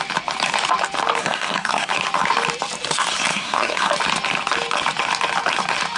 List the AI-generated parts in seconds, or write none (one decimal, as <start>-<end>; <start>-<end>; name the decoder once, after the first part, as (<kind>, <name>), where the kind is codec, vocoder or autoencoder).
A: 1.2-1.9 (codec, SNAC); 3.3-3.9